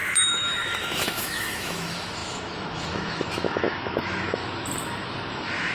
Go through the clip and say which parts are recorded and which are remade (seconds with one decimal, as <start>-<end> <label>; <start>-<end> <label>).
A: 0.0-4.4 remade; 4.4-5.3 recorded; 5.3-5.7 remade